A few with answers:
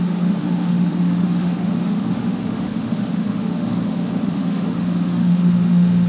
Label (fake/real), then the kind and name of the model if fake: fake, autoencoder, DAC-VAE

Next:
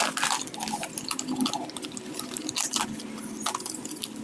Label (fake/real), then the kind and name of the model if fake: real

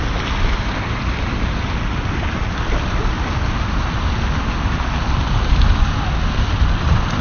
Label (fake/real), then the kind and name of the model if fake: real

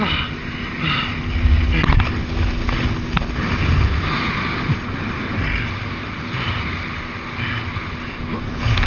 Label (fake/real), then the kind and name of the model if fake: real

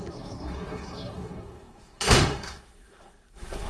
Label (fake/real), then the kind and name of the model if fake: fake, codec, SNAC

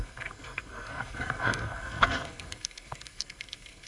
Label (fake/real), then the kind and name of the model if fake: fake, codec, SNAC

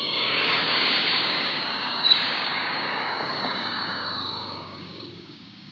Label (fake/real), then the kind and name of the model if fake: fake, codec, DAC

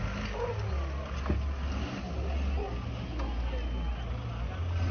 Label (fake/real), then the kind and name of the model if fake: real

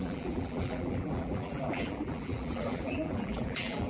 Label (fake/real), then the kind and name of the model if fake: fake, vocoder, BigVGAN v2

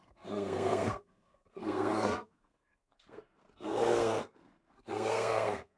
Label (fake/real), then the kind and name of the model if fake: fake, codec, SNAC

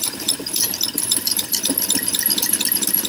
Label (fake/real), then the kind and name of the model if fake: real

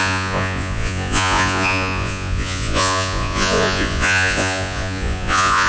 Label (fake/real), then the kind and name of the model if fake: fake, vocoder, Vocos